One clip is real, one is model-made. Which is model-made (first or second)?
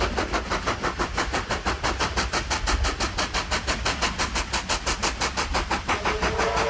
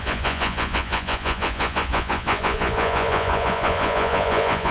second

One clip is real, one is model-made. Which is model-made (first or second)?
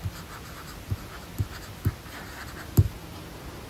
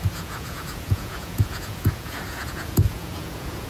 second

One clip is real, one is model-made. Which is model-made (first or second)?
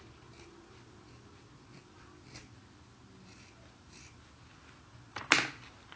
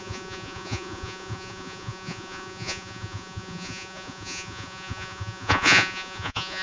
second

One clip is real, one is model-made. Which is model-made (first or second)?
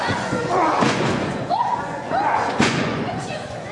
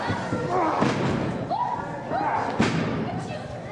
first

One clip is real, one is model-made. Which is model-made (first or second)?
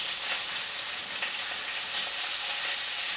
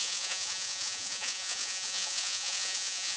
second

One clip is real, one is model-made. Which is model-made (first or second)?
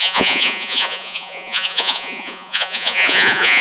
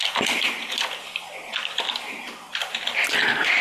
first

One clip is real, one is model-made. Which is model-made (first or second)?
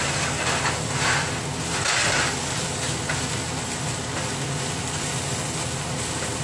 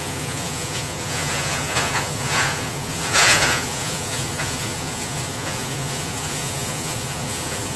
second